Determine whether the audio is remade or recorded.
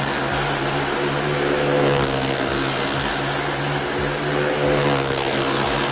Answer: recorded